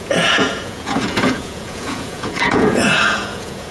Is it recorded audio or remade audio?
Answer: remade